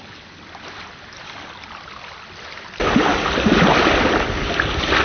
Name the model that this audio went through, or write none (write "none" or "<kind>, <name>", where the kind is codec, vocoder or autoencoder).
none